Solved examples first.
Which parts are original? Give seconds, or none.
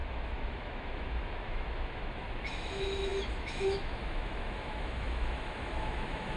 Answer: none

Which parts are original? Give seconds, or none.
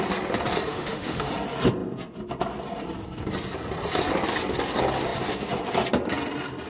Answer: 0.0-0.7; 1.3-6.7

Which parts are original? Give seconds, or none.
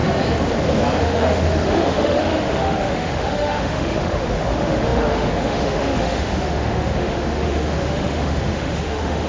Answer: 0.0-1.0